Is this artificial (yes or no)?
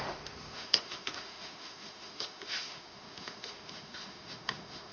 yes